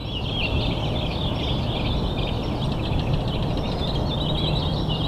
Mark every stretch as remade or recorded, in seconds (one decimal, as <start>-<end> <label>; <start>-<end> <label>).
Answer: 0.0-1.4 remade; 1.4-2.4 recorded; 2.4-3.7 remade; 3.7-5.1 recorded